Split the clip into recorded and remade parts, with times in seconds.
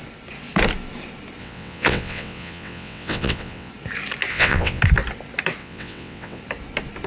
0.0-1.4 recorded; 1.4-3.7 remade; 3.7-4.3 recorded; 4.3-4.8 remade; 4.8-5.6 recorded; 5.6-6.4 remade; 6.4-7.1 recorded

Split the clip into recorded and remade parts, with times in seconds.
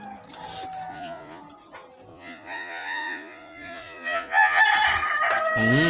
0.0-0.9 recorded; 0.9-1.4 remade; 1.4-2.1 recorded; 2.1-4.6 remade; 4.6-5.9 recorded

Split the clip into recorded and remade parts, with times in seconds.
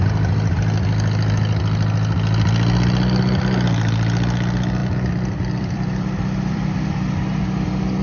0.0-4.8 recorded; 4.8-7.4 remade; 7.4-8.0 recorded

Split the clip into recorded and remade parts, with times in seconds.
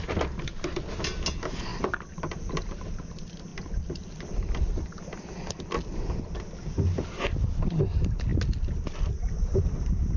0.0-1.7 recorded; 1.7-2.9 remade; 2.9-3.5 recorded; 3.5-6.2 remade; 6.2-10.2 recorded